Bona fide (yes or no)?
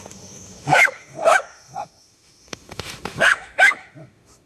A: no